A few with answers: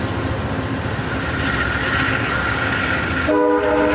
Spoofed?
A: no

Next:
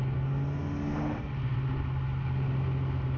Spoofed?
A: no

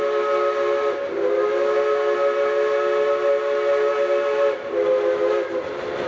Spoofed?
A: no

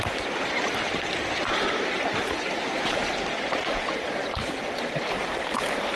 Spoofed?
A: yes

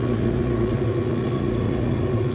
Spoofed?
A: yes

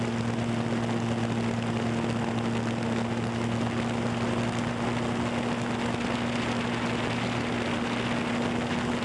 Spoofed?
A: no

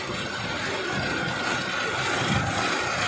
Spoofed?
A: no